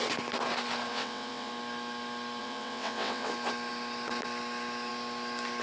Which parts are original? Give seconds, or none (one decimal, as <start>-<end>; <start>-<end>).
0.0-0.9; 1.5-2.4; 3.3-5.6